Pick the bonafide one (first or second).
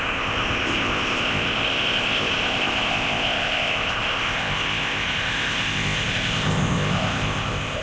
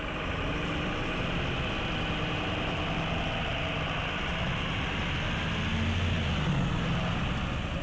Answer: second